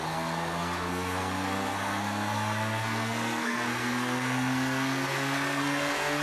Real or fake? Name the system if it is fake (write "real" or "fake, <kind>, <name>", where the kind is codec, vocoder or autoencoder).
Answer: fake, codec, SNAC